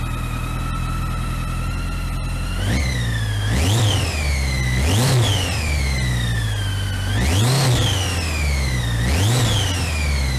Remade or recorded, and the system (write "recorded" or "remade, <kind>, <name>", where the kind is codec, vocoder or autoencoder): recorded